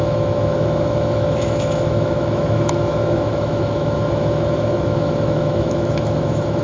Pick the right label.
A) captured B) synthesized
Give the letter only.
B